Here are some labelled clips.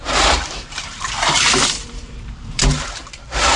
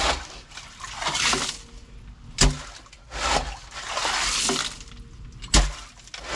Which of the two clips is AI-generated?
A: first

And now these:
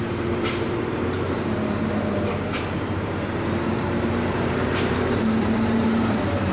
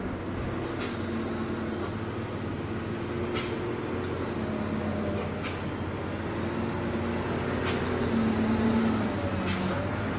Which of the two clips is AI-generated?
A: first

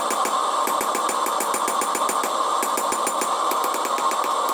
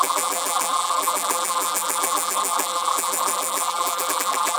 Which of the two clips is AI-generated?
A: second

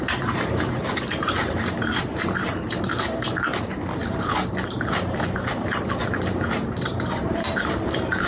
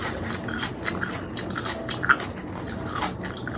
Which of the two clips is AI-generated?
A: first